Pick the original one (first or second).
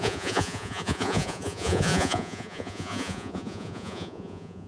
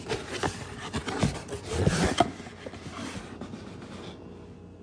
second